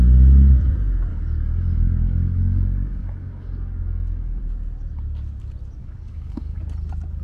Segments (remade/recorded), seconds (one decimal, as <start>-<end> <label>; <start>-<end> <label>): 0.0-1.1 recorded; 1.1-4.4 remade; 4.4-5.8 recorded; 5.8-6.6 remade; 6.6-7.2 recorded